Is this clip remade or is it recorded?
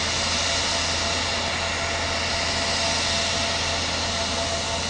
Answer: recorded